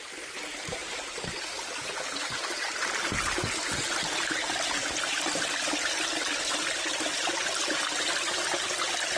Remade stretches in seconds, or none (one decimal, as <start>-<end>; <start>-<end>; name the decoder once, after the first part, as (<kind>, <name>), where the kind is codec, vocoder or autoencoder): 0.8-2.4 (vocoder, BigVGAN v2)